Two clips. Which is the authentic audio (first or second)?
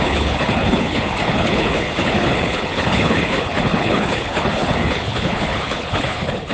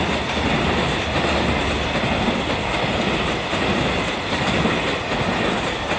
second